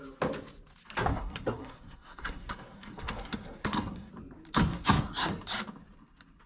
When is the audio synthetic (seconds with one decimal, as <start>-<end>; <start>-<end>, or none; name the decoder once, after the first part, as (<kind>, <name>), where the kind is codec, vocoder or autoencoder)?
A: 1.1-4.1 (codec, SNAC); 4.7-5.3